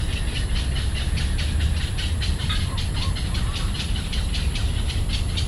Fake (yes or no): no